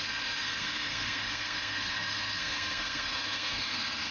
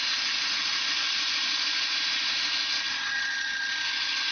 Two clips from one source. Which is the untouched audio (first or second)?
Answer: second